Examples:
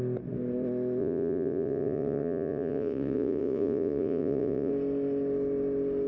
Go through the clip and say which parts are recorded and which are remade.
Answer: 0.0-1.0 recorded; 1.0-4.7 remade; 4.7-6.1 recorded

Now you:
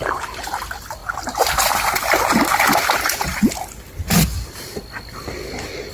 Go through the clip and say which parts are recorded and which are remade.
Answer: 0.0-5.9 recorded

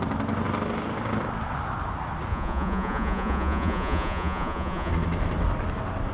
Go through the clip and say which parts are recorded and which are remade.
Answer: 0.0-2.3 recorded; 2.3-4.9 remade; 4.9-6.1 recorded

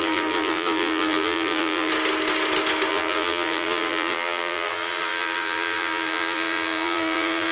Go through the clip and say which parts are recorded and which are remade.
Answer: 0.0-1.9 remade; 1.9-2.9 recorded; 2.9-7.5 remade

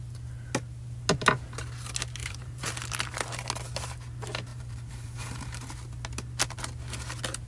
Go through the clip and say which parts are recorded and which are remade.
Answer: 0.0-2.2 recorded; 2.2-2.7 remade; 2.7-4.5 recorded; 4.5-5.7 remade; 5.7-7.5 recorded

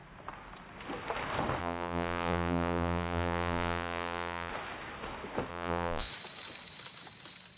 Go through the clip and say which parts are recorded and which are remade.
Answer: 0.0-1.6 recorded; 1.6-4.5 remade; 4.5-5.5 recorded; 5.5-6.1 remade; 6.1-7.6 recorded